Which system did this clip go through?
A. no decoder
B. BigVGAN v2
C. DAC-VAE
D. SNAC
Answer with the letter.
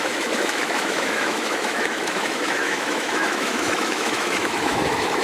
C